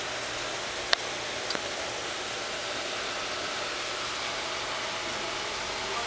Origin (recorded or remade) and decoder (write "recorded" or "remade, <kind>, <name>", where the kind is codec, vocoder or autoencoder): recorded